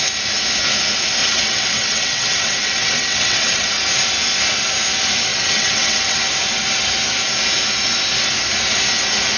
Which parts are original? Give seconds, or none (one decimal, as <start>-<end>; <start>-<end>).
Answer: 0.0-1.2; 3.8-5.3; 6.2-9.4